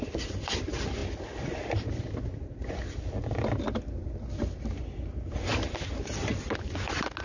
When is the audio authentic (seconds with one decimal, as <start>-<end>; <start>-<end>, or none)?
0.0-7.2